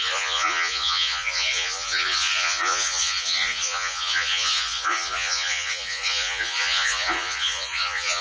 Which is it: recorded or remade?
remade